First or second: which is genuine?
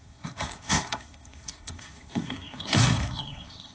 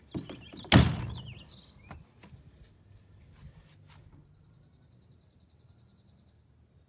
second